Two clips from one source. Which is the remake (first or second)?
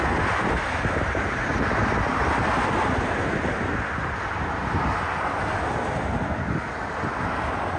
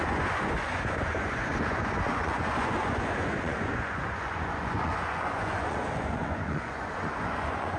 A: second